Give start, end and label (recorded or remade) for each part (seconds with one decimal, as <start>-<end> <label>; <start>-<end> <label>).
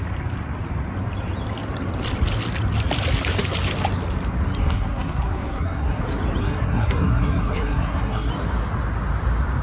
0.0-4.6 recorded; 4.6-6.0 remade; 6.0-6.4 recorded; 6.4-8.3 remade; 8.3-9.6 recorded